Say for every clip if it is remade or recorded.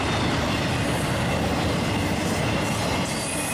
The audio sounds recorded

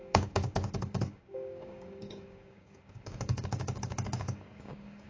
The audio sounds remade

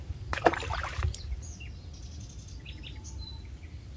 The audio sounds recorded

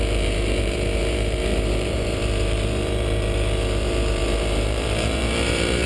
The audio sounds remade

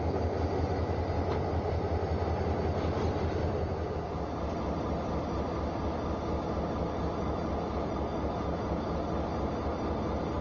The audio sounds recorded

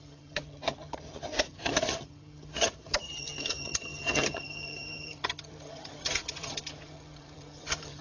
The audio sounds remade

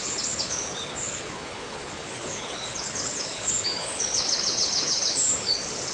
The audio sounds remade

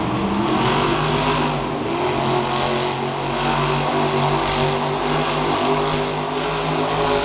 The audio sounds recorded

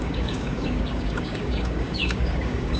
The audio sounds remade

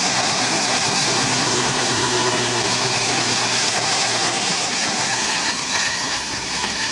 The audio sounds remade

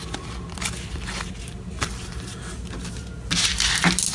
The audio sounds recorded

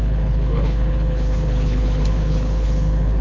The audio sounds remade